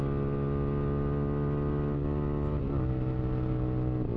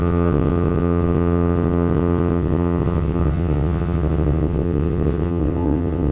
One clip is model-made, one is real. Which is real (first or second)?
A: first